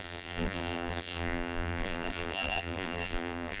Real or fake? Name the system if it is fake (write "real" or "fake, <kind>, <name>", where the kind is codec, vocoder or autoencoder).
fake, vocoder, BigVGAN v2